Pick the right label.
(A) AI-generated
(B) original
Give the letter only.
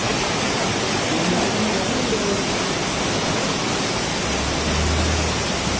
B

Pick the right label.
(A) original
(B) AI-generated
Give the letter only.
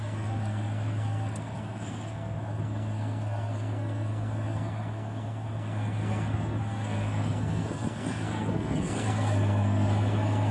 B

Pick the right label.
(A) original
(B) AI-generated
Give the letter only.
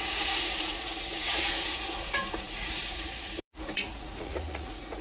B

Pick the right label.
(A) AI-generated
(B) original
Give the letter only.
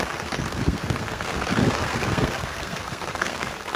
A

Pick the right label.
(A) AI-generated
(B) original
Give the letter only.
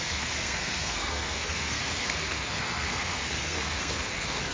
A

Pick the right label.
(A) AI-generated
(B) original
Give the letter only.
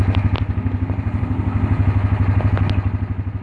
B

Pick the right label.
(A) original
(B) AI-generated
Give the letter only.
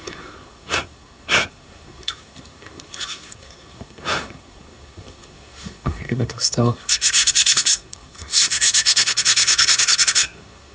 B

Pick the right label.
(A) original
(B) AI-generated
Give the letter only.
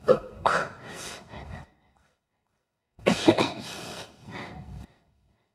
B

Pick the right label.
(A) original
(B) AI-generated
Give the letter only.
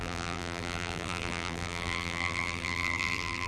B